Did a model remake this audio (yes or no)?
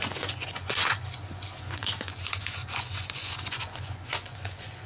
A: yes